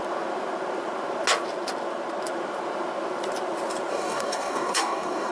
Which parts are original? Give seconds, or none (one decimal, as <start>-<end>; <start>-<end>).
0.0-3.9